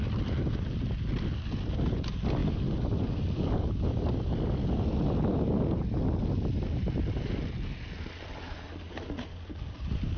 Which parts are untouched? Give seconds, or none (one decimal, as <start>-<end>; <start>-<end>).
0.0-10.2